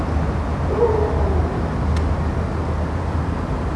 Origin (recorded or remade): recorded